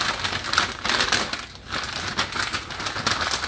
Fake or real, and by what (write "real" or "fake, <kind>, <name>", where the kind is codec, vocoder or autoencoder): real